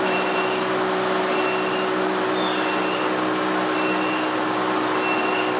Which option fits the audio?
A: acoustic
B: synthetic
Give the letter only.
A